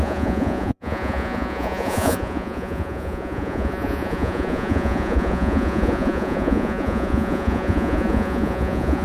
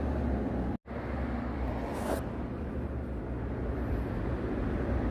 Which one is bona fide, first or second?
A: second